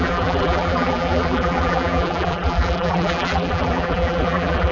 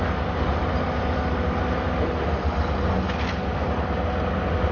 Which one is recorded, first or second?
second